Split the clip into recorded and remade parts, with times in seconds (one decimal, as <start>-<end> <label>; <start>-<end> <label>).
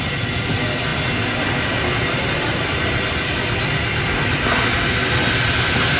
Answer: 0.0-6.0 recorded